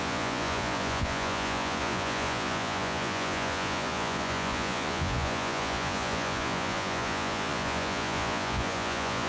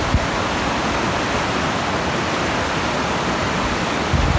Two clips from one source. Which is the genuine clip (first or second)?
second